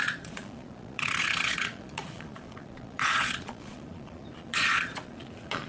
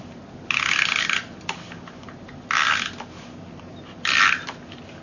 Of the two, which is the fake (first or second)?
first